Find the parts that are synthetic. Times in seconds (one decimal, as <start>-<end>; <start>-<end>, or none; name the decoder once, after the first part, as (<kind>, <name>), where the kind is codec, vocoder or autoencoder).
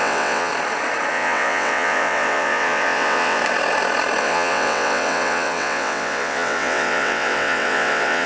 0.0-0.5 (vocoder, WaveNeXt); 1.1-3.4; 4.2-8.3